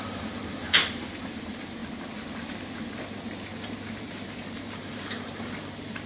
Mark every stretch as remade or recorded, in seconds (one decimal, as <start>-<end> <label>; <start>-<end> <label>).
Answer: 0.0-1.8 remade; 1.8-4.0 recorded; 4.0-6.1 remade